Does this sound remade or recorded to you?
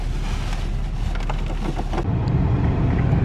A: recorded